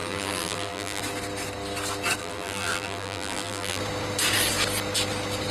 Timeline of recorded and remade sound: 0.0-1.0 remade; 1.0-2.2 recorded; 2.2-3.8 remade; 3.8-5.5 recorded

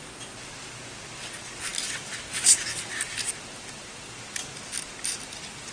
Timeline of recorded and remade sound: 0.0-5.7 recorded

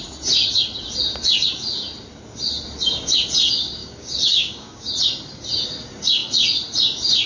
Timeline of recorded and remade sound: 0.0-3.8 recorded; 3.8-4.9 remade; 4.9-7.3 recorded

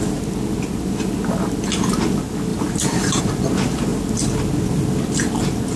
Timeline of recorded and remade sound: 0.0-2.5 recorded; 2.5-3.2 remade; 3.2-5.8 recorded